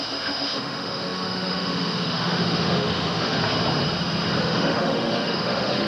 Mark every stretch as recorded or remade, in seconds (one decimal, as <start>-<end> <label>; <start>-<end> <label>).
0.0-3.4 remade; 3.4-4.4 recorded; 4.4-5.9 remade